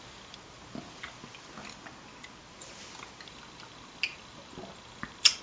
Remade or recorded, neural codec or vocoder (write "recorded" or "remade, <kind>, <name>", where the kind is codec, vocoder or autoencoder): recorded